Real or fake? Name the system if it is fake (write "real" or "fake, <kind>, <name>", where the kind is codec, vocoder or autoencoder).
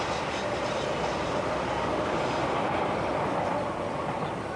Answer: real